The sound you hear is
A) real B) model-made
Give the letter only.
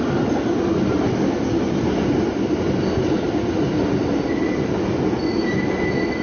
A